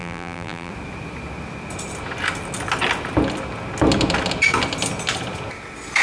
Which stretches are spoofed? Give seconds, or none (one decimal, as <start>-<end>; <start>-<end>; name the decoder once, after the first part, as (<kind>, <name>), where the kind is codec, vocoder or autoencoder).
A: 0.0-0.7 (vocoder, BigVGAN v2)